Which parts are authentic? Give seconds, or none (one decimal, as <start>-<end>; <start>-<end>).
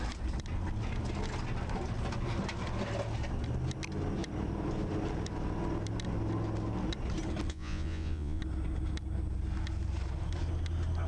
0.0-7.5; 8.4-11.1